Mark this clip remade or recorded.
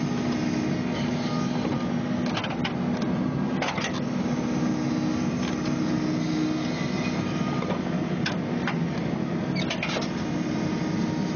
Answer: recorded